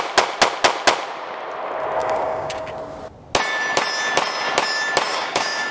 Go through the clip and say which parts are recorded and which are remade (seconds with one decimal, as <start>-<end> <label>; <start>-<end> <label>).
0.0-2.0 recorded; 2.0-2.7 remade; 2.7-5.1 recorded; 5.1-5.7 remade